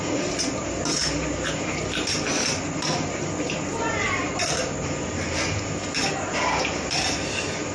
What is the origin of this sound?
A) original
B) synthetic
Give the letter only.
A